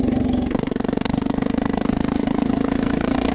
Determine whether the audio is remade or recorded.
remade